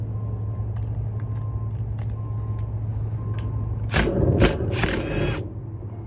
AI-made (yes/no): no